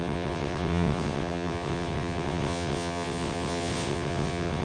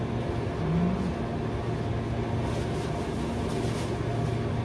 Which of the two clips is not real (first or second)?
first